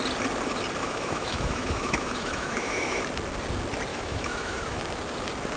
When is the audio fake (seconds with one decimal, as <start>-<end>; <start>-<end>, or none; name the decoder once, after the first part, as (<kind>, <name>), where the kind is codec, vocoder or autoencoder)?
0.8-3.0 (autoencoder, DAC-VAE); 3.9-4.8